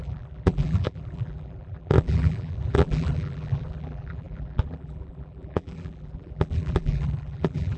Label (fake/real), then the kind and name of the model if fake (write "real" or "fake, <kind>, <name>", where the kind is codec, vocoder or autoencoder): fake, vocoder, BigVGAN v2